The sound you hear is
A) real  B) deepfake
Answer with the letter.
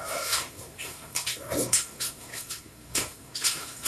B